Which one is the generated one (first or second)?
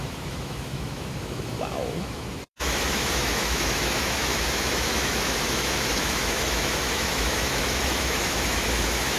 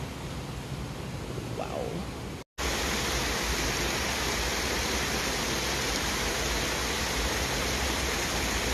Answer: first